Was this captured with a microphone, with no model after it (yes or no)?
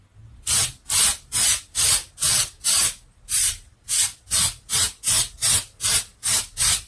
yes